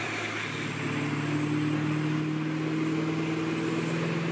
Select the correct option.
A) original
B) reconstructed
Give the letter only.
A